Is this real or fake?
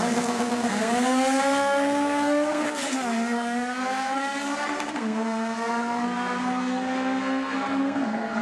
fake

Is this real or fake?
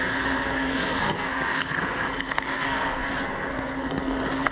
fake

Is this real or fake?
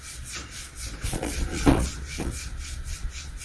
fake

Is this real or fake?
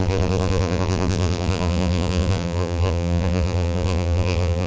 fake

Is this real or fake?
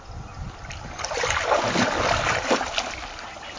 real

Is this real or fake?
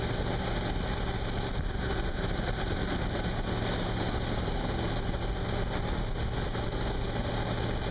real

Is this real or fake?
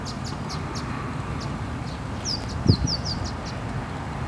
real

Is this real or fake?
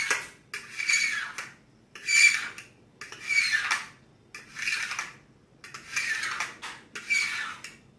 real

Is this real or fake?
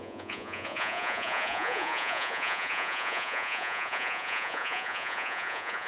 fake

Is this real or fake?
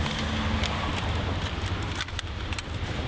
real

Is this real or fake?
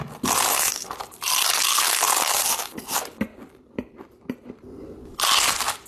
real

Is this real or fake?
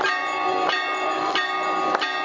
real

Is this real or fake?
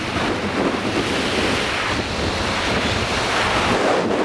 real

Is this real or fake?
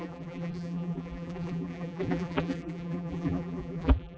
fake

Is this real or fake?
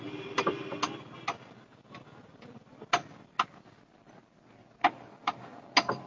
real